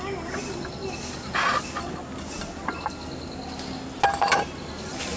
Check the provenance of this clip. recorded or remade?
recorded